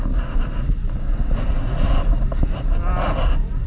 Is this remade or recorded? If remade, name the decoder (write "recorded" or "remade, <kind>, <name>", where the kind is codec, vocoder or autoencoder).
recorded